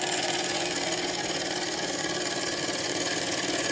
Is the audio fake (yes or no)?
yes